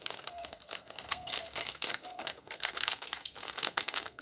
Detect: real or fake fake